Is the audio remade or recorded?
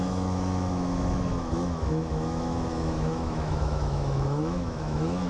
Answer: remade